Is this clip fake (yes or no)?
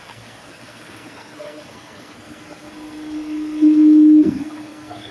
yes